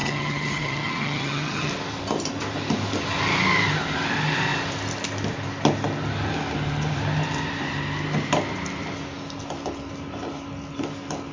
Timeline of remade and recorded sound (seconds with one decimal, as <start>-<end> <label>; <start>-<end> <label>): 0.0-1.7 remade; 1.7-11.3 recorded